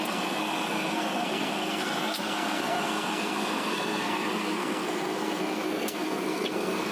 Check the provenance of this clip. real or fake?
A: fake